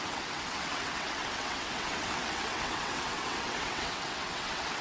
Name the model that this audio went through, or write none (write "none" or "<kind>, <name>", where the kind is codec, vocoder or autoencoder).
vocoder, WaveNeXt